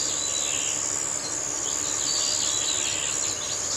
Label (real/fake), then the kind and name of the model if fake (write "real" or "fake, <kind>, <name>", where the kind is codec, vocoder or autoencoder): real